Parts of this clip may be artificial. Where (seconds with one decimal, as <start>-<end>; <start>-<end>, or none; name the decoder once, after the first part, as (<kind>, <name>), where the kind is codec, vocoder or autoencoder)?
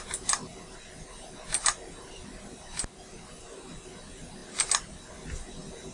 none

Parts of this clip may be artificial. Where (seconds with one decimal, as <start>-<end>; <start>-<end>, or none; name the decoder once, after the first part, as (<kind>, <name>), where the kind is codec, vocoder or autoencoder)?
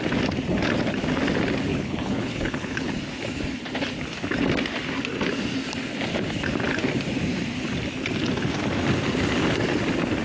1.7-2.9 (codec, HILCodec)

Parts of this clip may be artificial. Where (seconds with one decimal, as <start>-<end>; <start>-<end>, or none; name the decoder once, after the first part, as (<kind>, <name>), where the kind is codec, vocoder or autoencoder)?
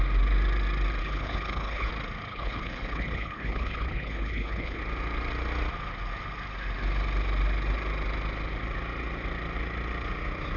1.0-1.9 (codec, HILCodec); 2.3-4.8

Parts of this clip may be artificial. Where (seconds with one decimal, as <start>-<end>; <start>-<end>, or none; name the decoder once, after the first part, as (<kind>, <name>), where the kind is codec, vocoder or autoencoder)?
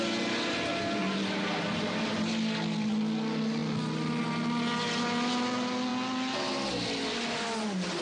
none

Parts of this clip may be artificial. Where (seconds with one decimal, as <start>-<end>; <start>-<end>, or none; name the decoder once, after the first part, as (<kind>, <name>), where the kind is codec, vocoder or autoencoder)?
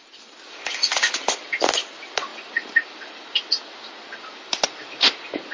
none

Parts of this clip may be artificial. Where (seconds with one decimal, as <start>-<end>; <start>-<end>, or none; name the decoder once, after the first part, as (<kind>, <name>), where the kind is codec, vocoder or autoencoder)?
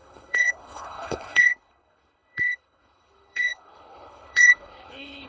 0.0-5.3 (codec, HILCodec)